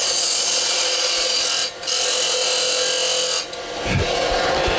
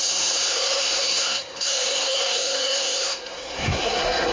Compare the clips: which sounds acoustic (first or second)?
first